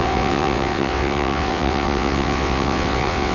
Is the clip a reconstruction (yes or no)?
yes